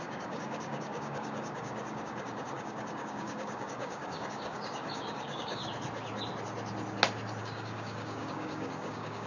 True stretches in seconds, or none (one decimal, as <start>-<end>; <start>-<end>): 5.6-7.4